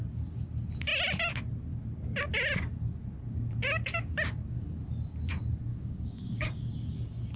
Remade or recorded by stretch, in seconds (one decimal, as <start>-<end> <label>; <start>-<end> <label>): 0.0-5.7 recorded; 5.7-6.7 remade; 6.7-7.4 recorded